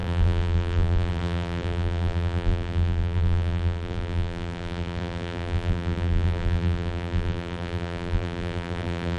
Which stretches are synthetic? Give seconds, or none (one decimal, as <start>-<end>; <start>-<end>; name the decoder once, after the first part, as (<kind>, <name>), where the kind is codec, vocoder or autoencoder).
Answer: 0.0-9.2 (vocoder, BigVGAN v2)